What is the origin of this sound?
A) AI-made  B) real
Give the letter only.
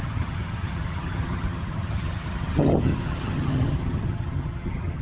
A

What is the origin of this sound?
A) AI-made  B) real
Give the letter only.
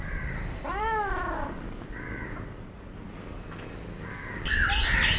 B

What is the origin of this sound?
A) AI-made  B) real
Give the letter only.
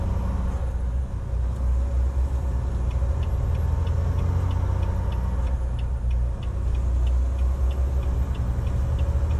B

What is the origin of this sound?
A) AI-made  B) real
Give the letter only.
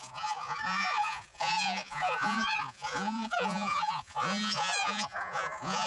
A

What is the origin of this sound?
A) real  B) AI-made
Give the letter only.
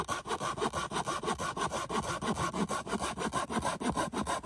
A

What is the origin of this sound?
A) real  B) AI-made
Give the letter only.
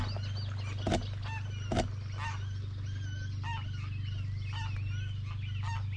A